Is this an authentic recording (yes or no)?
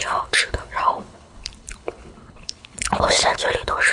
no